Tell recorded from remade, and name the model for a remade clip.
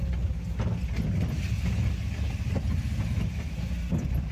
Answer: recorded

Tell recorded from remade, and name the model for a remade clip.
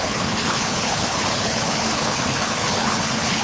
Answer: remade, codec, HILCodec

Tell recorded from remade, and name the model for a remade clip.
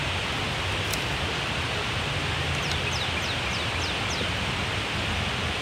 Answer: recorded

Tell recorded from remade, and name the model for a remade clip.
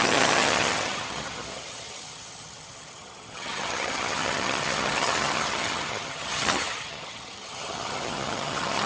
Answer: remade, vocoder, HiFi-GAN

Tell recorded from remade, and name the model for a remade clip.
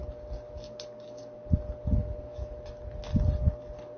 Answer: recorded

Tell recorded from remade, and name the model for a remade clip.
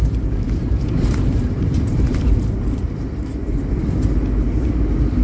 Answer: remade, vocoder, BigVGAN v2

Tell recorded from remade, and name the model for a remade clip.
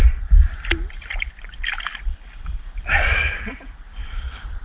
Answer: recorded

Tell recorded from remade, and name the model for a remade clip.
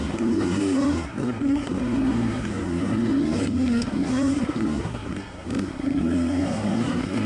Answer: remade, codec, SNAC